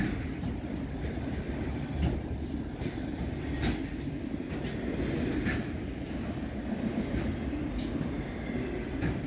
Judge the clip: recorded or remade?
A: recorded